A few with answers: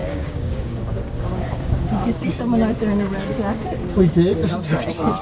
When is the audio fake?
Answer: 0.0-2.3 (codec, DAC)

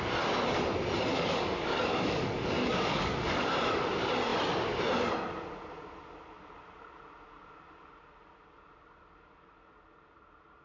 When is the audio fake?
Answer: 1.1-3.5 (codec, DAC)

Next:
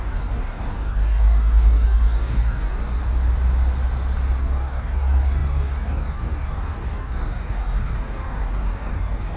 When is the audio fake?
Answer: 0.0-3.0 (codec, DAC); 4.4-9.4

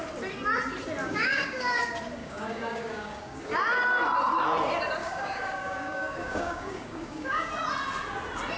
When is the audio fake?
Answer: 1.0-1.8 (codec, DAC); 2.2-3.4; 5.0-7.5

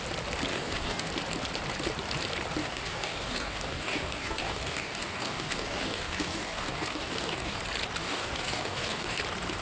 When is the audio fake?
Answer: 0.5-1.1 (codec, DAC); 2.6-7.6; 8.0-9.2

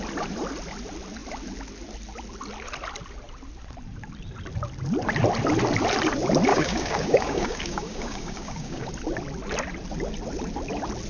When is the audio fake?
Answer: 6.5-8.9 (codec, DAC)

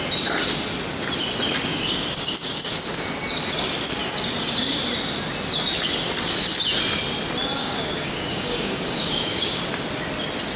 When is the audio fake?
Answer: 1.7-2.7 (codec, DAC); 7.6-9.6

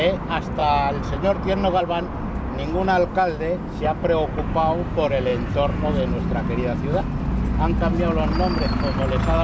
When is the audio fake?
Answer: none